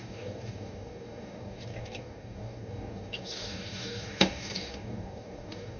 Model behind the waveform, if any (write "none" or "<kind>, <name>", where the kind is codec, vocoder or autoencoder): codec, DAC